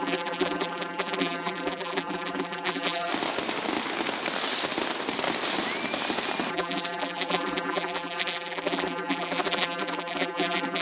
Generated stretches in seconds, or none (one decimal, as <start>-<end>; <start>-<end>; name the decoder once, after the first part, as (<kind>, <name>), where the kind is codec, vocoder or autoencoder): 0.0-3.1 (vocoder, BigVGAN v2); 6.5-10.8